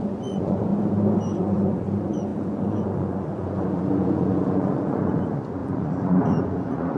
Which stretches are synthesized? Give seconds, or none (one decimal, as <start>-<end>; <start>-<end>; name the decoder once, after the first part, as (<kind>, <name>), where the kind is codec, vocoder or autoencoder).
0.0-0.7 (vocoder, Vocos); 1.4-7.0